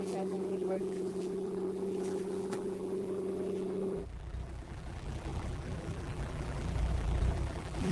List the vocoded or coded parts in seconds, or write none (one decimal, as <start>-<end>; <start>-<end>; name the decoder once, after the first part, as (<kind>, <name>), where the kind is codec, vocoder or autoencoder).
0.0-7.9 (vocoder, BigVGAN v2)